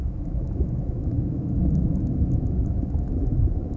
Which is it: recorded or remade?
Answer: remade